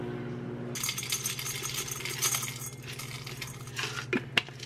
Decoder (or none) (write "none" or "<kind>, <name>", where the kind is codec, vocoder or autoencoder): none